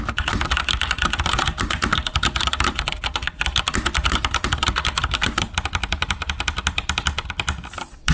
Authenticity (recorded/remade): remade